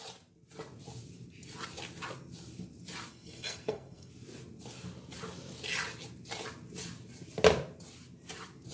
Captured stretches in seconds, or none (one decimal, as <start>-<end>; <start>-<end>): 0.0-3.1; 4.1-8.7